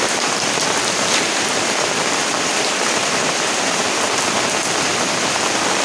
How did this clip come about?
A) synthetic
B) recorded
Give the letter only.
B